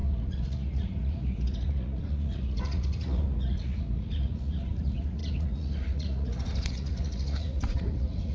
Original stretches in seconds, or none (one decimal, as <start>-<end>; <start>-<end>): none